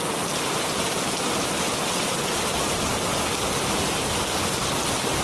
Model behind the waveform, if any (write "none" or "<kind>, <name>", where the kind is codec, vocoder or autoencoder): none